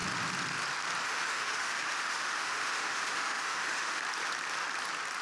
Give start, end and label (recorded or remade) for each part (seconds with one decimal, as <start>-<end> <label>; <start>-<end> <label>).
0.0-1.0 recorded; 1.0-4.0 remade; 4.0-5.2 recorded